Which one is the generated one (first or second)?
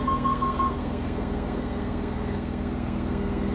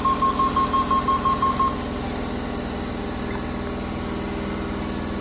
first